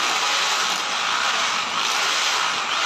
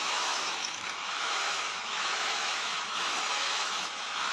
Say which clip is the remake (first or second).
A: second